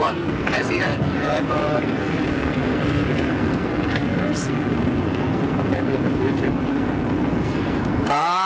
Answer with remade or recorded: remade